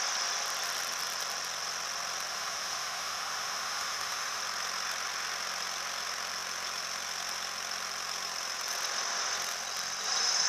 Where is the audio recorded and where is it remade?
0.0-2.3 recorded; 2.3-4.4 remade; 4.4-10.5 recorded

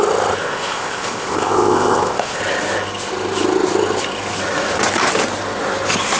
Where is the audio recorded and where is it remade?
0.0-0.4 recorded; 0.4-2.4 remade; 2.4-6.2 recorded